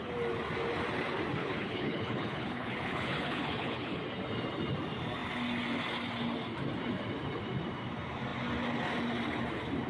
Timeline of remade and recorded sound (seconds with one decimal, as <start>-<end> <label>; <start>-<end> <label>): 0.0-1.4 recorded; 1.4-4.0 remade; 4.0-9.9 recorded